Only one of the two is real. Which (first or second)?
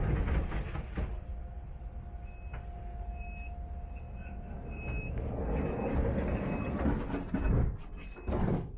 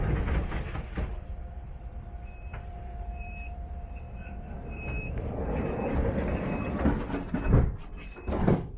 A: first